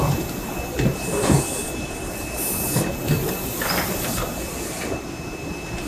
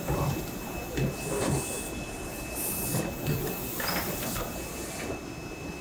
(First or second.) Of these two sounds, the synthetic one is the first